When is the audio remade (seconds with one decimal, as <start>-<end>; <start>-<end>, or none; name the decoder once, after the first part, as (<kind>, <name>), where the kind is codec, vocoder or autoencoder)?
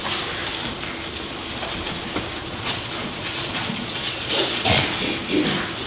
2.4-4.8 (vocoder, Vocos)